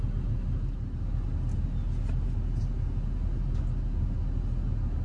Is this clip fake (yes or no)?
no